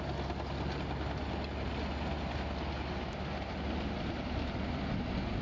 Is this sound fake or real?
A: real